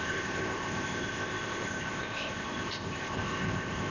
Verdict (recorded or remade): remade